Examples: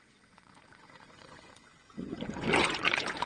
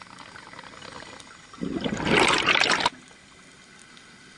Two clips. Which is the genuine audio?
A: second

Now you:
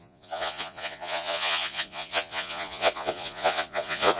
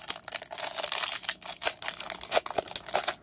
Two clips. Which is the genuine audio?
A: second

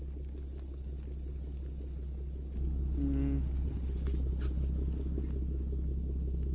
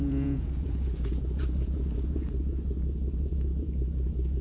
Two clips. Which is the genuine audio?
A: first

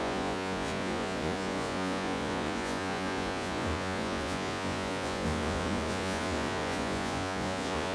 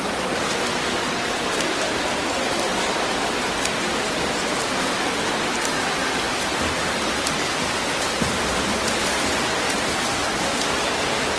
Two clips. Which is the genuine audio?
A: second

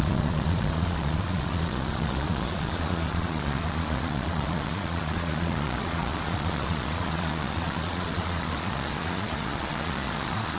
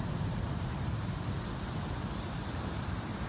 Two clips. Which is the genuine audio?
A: second